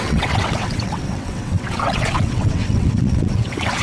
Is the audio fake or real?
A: fake